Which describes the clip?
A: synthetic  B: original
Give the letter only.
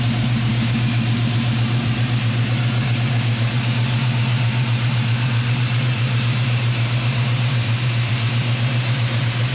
A